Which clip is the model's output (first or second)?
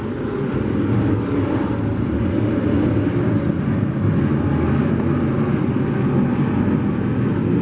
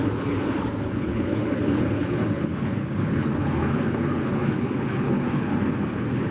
second